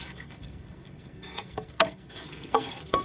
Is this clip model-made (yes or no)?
yes